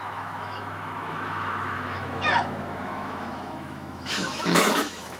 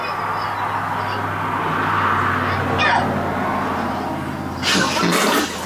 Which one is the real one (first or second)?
second